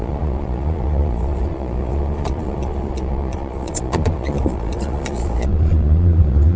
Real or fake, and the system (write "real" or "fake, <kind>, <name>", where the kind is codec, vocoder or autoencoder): fake, vocoder, Vocos